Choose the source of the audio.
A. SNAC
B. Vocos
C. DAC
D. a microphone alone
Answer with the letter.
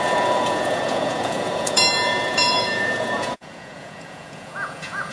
B